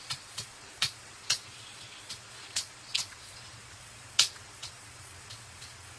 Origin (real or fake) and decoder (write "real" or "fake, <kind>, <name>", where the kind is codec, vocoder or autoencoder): fake, vocoder, Vocos